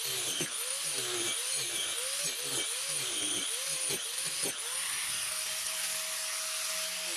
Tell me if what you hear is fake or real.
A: real